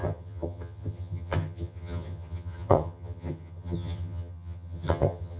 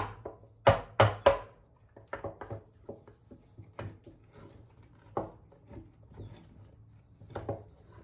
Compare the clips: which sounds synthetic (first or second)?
first